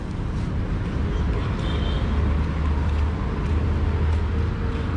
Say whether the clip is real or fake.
real